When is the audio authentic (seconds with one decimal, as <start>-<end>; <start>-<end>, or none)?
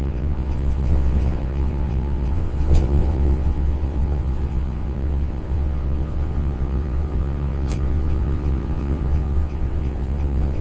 none